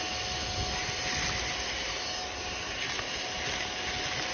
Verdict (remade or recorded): recorded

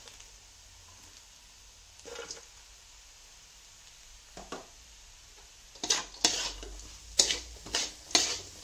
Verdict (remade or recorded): recorded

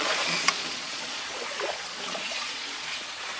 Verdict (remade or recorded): remade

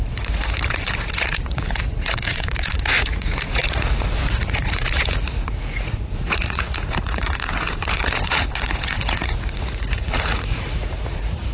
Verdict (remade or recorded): remade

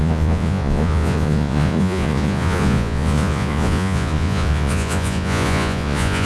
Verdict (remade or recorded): remade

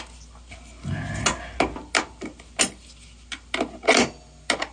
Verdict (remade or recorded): recorded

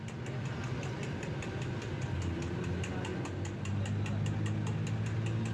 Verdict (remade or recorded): recorded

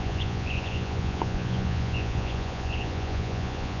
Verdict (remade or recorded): remade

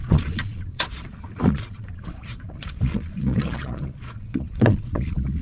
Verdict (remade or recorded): remade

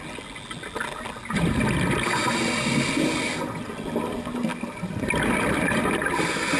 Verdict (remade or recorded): recorded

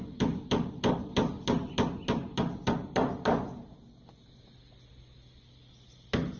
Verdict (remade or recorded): recorded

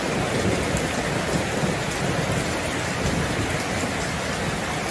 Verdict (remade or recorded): recorded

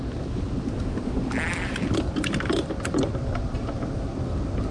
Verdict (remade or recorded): recorded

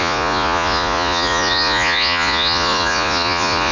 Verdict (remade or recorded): remade